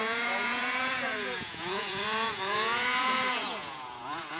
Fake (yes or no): yes